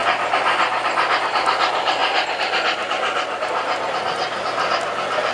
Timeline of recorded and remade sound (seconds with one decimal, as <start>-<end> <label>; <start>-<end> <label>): 0.0-5.3 recorded